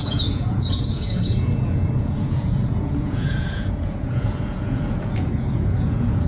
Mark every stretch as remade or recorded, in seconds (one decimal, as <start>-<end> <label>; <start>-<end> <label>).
0.0-6.3 remade